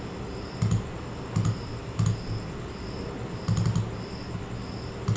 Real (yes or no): yes